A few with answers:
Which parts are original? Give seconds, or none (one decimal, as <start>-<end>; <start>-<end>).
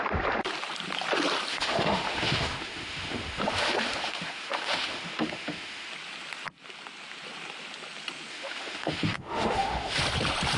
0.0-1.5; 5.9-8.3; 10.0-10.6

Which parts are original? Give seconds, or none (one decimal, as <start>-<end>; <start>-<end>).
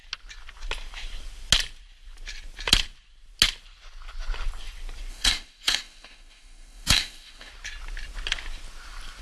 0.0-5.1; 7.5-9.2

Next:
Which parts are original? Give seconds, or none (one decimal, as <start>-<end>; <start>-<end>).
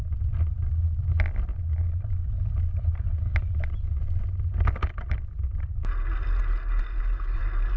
0.0-7.8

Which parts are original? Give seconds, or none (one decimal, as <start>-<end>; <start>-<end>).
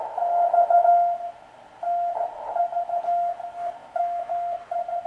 0.0-3.8; 4.3-5.1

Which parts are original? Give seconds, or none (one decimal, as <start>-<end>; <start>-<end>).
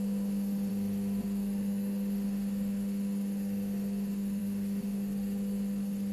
none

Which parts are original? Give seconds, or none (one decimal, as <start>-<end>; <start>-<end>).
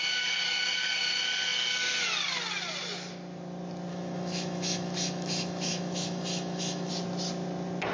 0.0-3.9; 6.9-7.9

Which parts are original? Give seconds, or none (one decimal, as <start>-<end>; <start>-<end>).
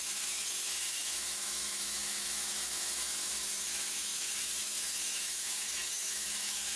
none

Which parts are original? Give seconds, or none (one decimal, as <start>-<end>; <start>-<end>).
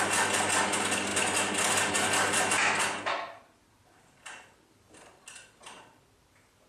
0.0-6.7